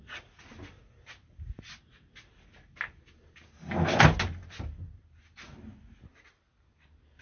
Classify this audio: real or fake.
real